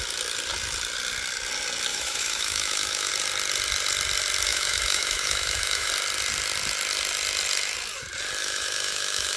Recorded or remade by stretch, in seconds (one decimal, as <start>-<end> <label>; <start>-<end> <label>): 0.0-1.9 recorded; 1.9-3.1 remade; 3.1-4.5 recorded; 4.5-5.9 remade; 5.9-8.4 recorded; 8.4-9.4 remade